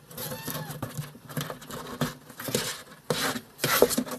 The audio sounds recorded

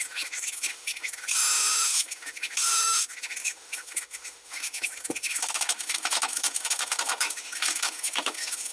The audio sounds remade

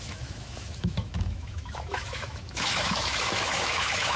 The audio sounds remade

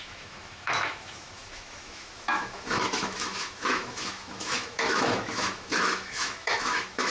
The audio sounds remade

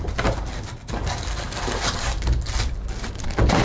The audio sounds recorded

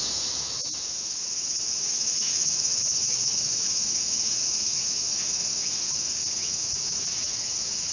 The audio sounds remade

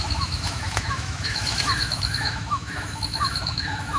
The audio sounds remade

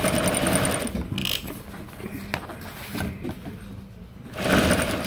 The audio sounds recorded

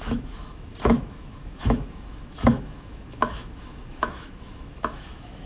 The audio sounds remade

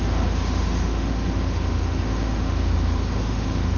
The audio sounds remade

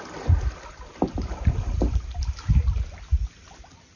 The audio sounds recorded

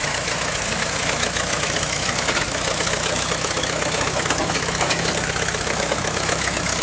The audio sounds remade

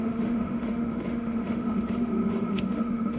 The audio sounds remade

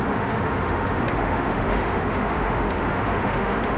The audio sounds remade